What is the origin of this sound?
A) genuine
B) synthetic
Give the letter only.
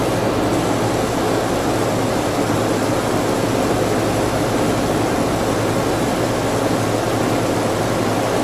A